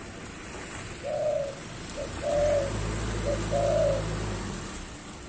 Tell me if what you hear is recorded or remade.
recorded